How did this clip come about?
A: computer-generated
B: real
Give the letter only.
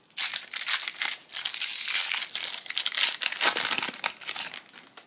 B